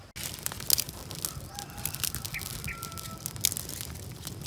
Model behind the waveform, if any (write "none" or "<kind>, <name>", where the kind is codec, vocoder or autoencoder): none